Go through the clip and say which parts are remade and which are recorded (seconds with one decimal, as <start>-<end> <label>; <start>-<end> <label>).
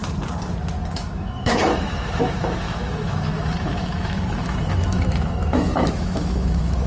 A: 0.0-0.9 recorded; 0.9-6.9 remade